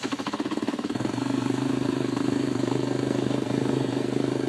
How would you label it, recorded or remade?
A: remade